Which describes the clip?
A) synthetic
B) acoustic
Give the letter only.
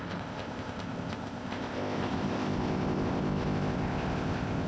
A